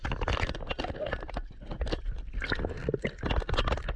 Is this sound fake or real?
real